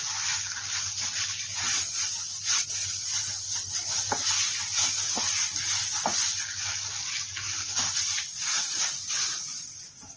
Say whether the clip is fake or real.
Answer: real